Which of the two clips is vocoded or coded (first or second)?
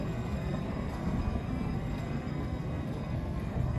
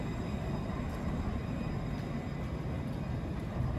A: first